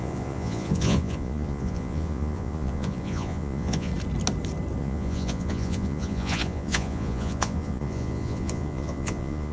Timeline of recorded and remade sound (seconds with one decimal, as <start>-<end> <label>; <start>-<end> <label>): 0.0-3.9 remade; 3.9-4.8 recorded; 4.8-9.5 remade